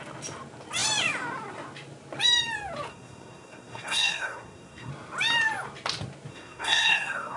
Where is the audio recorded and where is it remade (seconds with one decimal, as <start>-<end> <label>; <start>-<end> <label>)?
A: 0.0-2.9 recorded; 2.9-4.9 remade; 4.9-6.3 recorded; 6.3-7.4 remade